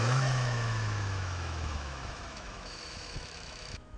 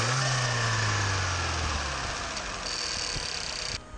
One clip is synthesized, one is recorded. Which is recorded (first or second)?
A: second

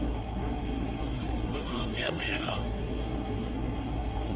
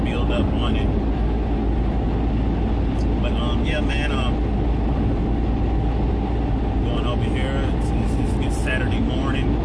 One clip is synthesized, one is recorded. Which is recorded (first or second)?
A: second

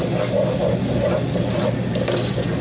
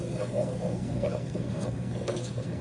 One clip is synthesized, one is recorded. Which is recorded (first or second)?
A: first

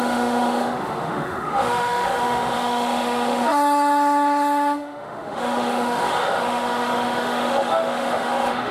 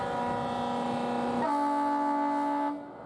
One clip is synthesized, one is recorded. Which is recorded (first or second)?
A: second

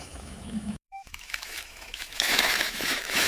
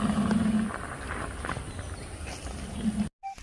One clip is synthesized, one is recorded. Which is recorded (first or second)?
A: second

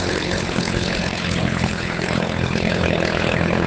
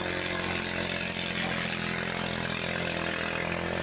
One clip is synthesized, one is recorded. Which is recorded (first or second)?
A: second